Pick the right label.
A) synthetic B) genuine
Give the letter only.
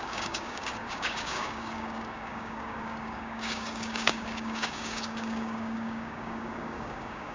A